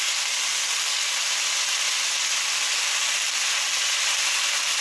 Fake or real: real